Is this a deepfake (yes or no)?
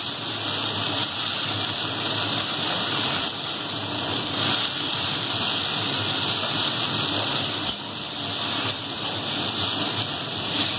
no